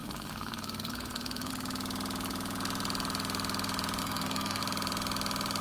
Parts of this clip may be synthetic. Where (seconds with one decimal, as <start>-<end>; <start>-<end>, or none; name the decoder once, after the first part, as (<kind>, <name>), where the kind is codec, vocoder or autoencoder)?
0.0-1.5 (codec, SNAC); 4.0-4.6